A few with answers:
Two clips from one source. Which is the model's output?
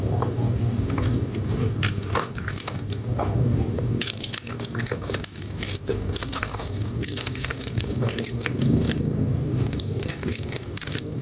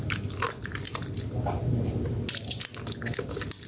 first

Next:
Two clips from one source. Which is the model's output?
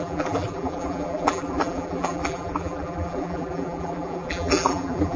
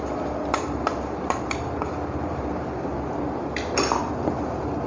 first